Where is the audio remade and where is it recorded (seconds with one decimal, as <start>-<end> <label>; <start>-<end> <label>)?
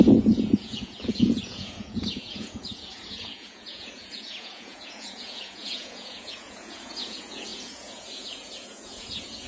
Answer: 0.0-9.5 remade